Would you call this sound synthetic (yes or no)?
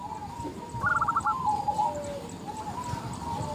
no